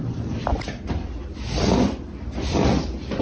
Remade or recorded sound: remade